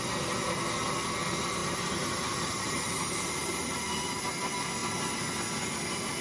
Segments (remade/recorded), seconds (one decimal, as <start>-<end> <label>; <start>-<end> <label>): 0.0-1.6 recorded; 1.6-4.2 remade; 4.2-6.2 recorded